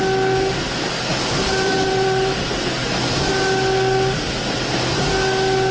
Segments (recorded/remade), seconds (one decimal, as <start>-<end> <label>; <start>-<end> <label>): 0.0-1.1 recorded; 1.1-2.4 remade; 2.4-5.7 recorded